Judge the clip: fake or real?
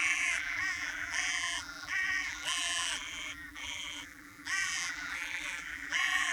fake